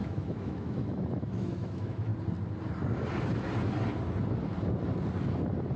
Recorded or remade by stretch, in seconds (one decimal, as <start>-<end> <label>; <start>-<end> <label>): 0.0-2.1 remade; 2.1-5.8 recorded